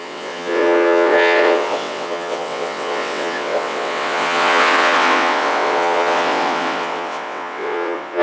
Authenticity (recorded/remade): remade